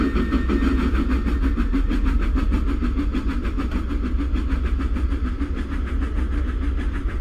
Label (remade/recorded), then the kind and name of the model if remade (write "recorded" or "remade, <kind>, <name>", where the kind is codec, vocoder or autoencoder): recorded